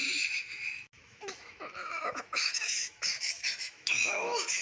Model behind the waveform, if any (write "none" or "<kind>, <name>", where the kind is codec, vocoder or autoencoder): autoencoder, DAC-VAE